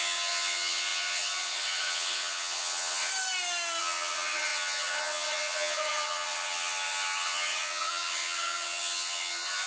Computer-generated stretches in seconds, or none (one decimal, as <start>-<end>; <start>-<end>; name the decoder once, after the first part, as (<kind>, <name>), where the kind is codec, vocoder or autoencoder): 0.0-3.1 (vocoder, HiFi-GAN); 3.8-9.7